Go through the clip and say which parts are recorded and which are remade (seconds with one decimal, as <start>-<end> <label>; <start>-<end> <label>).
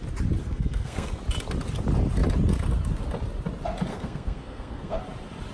0.0-0.4 recorded; 0.4-1.2 remade; 1.2-3.9 recorded; 3.9-5.0 remade; 5.0-5.5 recorded